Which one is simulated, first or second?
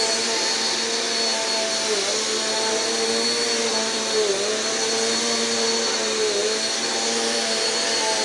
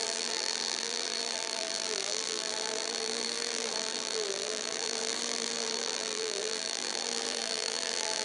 second